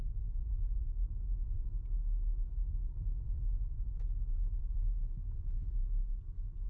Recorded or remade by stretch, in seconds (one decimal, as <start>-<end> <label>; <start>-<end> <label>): 0.0-6.7 recorded